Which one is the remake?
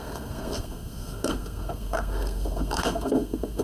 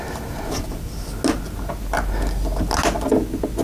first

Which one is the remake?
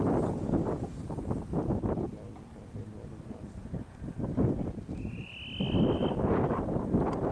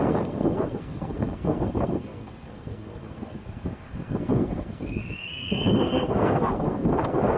second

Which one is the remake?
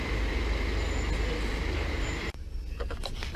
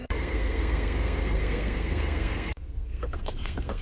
second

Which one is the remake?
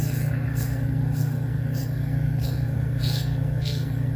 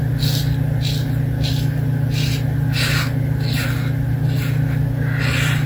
first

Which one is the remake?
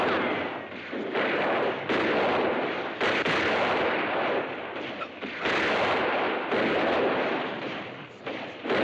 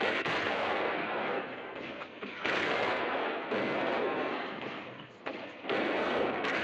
second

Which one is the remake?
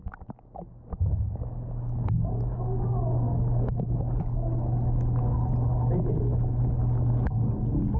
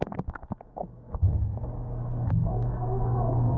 second